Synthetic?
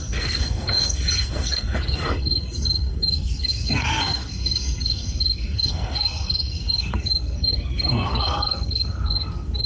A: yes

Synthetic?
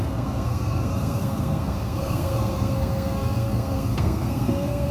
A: yes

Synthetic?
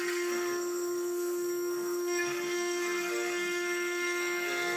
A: yes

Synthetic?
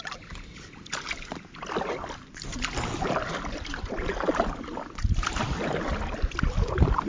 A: no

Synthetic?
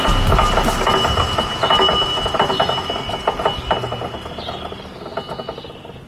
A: no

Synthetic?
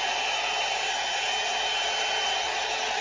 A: no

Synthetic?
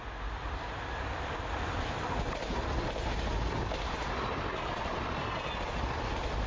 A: no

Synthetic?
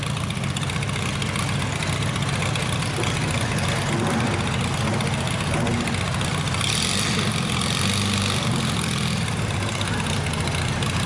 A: no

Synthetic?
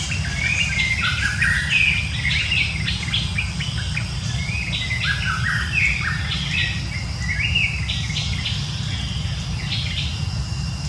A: no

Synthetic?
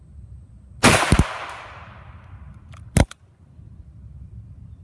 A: no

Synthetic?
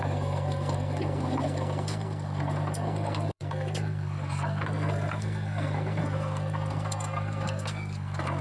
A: yes